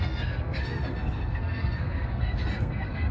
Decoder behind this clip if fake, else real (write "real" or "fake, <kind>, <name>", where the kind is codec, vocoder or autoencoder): fake, codec, SNAC